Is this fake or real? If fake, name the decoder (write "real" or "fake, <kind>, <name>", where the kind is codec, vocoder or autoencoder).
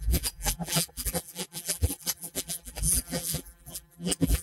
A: fake, vocoder, BigVGAN v2